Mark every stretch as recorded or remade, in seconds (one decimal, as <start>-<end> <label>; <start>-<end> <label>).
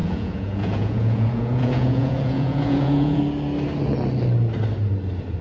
0.0-3.2 remade; 3.2-5.4 recorded